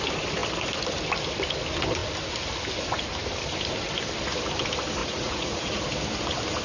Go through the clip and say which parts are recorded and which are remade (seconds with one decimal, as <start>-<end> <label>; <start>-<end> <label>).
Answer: 0.0-5.0 recorded; 5.0-5.8 remade; 5.8-6.6 recorded